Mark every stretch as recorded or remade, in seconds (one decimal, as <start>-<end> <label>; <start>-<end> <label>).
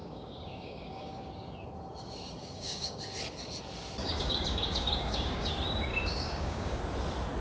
0.0-1.3 remade; 1.3-2.4 recorded; 2.4-3.0 remade; 3.0-4.0 recorded; 4.0-5.5 remade; 5.5-5.9 recorded; 5.9-6.8 remade; 6.8-7.4 recorded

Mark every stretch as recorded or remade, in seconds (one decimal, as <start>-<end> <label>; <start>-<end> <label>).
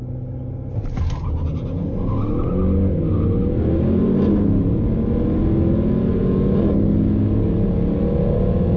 0.0-8.8 recorded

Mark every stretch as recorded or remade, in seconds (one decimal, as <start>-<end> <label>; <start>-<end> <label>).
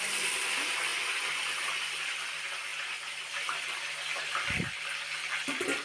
0.0-5.8 recorded